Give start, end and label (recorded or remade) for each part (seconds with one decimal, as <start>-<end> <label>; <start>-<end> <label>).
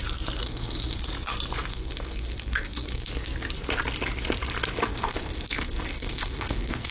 0.0-0.4 recorded; 0.4-1.1 remade; 1.1-1.7 recorded; 1.7-3.1 remade; 3.1-4.9 recorded; 4.9-6.9 remade